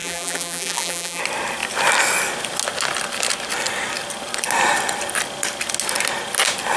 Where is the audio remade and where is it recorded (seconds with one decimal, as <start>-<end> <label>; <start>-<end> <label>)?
0.0-1.2 remade; 1.2-6.8 recorded